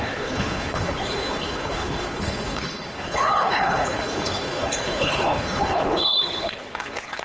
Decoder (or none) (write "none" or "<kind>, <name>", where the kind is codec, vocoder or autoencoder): codec, HILCodec